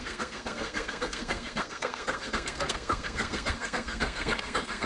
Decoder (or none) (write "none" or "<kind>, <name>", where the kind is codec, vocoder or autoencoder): codec, SNAC